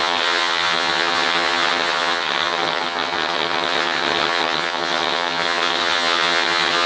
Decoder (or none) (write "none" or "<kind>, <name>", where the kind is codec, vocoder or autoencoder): vocoder, HiFi-GAN